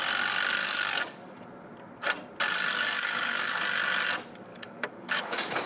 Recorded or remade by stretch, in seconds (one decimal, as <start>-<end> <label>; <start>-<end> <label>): 0.0-0.6 recorded; 0.6-1.4 remade; 1.4-2.7 recorded; 2.7-3.6 remade; 3.6-4.5 recorded; 4.5-5.7 remade